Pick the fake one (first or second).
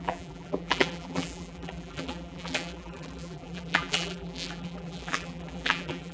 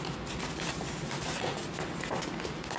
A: first